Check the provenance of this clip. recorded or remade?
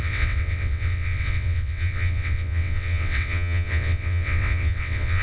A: remade